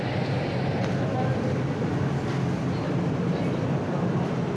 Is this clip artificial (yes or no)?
no